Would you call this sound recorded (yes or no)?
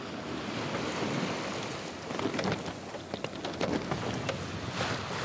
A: yes